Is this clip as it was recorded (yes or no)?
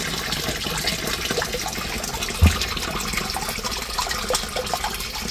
yes